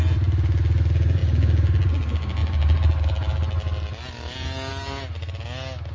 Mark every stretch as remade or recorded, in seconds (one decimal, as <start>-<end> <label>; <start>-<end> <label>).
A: 0.0-5.9 recorded